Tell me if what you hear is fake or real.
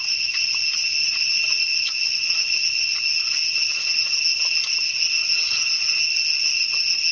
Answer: real